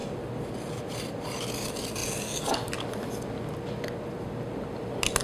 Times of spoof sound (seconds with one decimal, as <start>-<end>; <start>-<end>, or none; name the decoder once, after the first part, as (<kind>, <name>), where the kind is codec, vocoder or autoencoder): 0.0-2.0 (vocoder, BigVGAN v2)